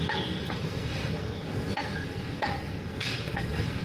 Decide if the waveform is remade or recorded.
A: remade